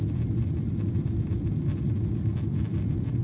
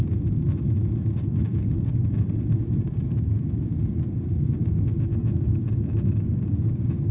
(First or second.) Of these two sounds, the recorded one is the first